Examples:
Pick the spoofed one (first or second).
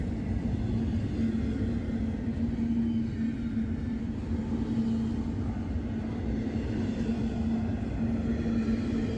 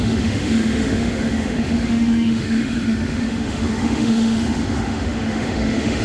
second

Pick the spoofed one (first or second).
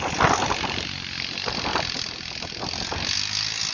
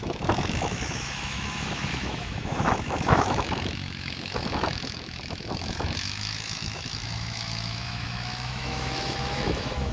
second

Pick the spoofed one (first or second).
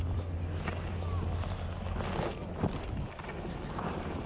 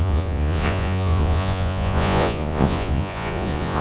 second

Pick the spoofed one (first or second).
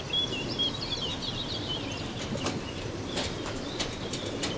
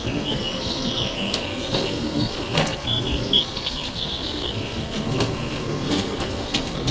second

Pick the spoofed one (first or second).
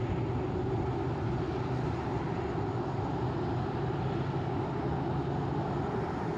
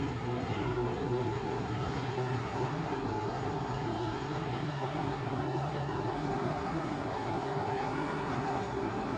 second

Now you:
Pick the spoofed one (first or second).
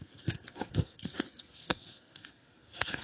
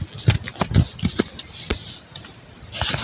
first